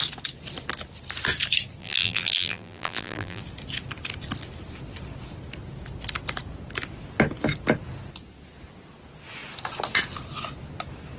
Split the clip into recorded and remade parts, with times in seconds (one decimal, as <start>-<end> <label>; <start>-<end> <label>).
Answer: 0.0-1.8 recorded; 1.8-3.4 remade; 3.4-11.2 recorded

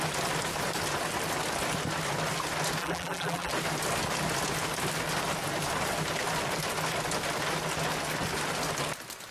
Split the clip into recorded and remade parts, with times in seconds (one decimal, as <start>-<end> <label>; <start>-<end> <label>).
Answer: 0.0-2.8 recorded; 2.8-3.5 remade; 3.5-9.3 recorded

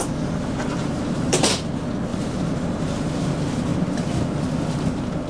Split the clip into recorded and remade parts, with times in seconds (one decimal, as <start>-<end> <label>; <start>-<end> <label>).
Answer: 0.0-0.8 recorded; 0.8-1.6 remade; 1.6-2.1 recorded; 2.1-3.1 remade; 3.1-5.3 recorded

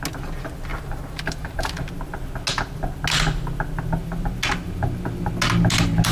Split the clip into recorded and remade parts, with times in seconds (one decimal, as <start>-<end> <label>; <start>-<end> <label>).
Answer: 0.0-0.7 recorded; 0.7-1.9 remade; 1.9-6.1 recorded

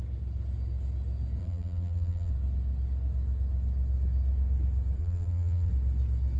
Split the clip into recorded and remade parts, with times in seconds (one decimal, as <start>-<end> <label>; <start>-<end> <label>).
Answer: 0.0-1.4 recorded; 1.4-2.3 remade; 2.3-5.0 recorded; 5.0-5.7 remade; 5.7-6.4 recorded

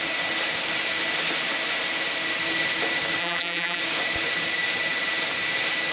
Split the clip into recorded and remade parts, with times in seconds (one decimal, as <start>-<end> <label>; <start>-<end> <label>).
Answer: 0.0-3.2 recorded; 3.2-3.8 remade; 3.8-5.9 recorded